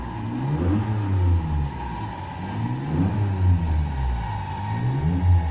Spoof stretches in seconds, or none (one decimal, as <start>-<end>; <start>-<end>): none